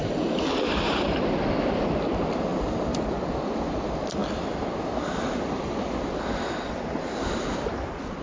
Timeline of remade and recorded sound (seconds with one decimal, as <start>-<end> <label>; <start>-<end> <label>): 0.0-2.5 remade; 2.5-3.3 recorded; 3.3-4.2 remade; 4.2-8.2 recorded